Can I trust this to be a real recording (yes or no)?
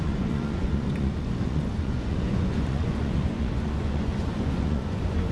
no